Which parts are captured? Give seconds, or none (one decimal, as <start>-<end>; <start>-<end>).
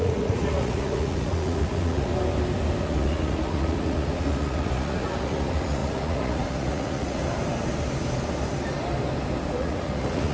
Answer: 2.1-2.8; 7.2-9.6